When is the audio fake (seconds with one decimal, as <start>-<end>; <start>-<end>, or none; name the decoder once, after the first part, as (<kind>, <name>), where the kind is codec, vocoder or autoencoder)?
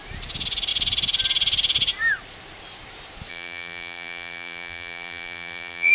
3.3-5.9 (vocoder, BigVGAN v2)